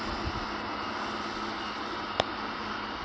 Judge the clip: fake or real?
real